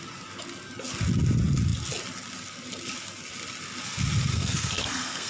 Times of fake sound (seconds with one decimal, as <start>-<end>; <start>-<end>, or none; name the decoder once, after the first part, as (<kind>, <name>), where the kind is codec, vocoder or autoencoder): 4.3-5.3 (codec, SNAC)